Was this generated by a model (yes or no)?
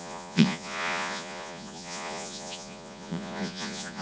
yes